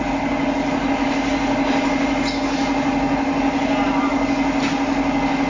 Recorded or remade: recorded